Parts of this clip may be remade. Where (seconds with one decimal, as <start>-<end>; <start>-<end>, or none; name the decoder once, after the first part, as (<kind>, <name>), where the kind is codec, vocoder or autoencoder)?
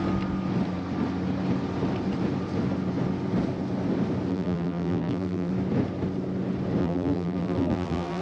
4.3-5.5 (vocoder, BigVGAN v2); 6.8-8.2